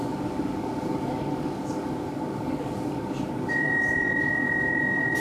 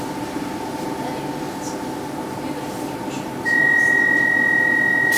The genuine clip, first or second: second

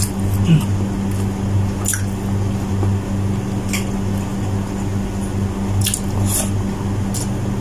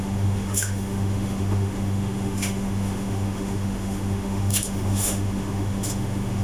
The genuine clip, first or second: first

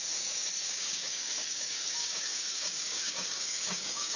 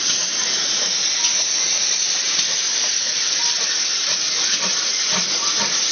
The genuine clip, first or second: second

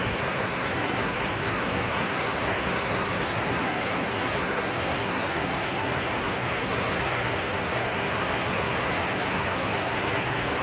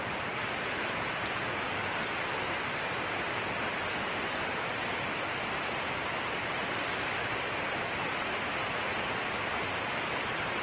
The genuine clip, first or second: second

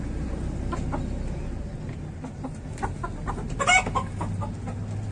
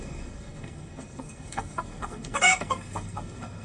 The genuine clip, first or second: first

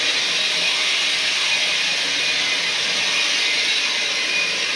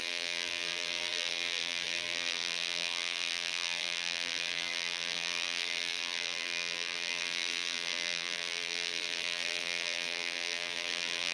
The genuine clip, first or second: first